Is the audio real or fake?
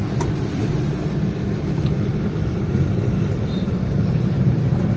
real